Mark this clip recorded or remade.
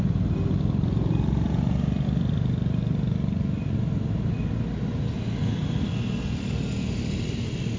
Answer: recorded